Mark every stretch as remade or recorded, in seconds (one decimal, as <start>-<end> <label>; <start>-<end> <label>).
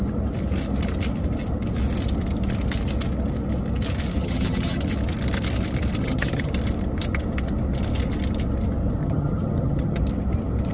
0.0-4.2 recorded; 4.2-4.8 remade; 4.8-6.0 recorded; 6.0-6.5 remade; 6.5-9.0 recorded; 9.0-10.0 remade; 10.0-10.7 recorded